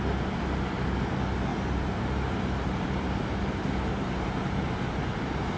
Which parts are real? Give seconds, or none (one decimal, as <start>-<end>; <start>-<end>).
0.0-1.5; 4.9-5.6